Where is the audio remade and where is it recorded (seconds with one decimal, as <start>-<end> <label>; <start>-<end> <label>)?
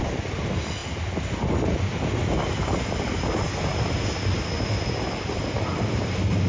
0.0-6.5 recorded